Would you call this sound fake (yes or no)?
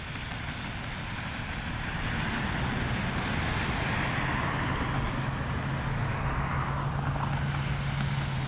no